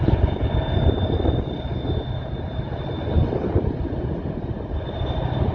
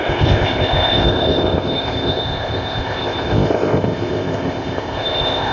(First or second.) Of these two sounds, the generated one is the second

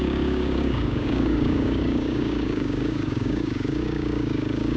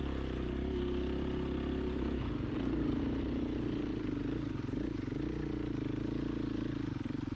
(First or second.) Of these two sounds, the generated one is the first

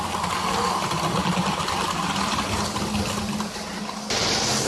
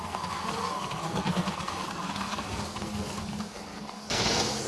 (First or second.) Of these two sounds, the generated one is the second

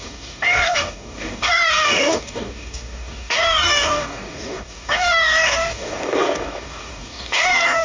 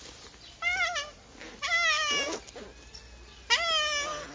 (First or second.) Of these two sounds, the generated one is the first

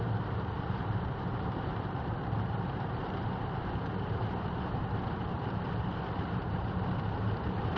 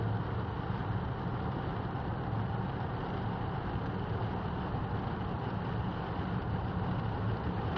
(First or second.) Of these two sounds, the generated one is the first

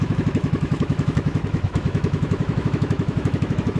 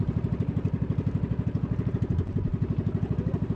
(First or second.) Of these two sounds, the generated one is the first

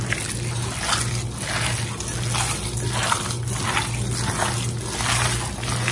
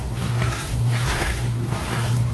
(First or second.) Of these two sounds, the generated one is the second